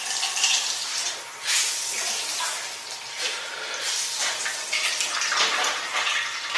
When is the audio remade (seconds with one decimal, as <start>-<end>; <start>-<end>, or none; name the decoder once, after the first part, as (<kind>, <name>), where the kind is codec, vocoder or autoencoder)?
0.9-4.4 (vocoder, BigVGAN v2)